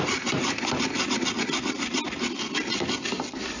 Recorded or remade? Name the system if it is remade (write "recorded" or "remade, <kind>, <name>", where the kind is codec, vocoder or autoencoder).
recorded